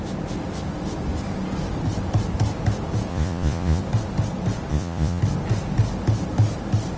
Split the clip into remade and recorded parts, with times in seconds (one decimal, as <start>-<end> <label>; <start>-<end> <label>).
0.0-3.1 recorded; 3.1-3.8 remade; 3.8-4.7 recorded; 4.7-5.2 remade; 5.2-7.0 recorded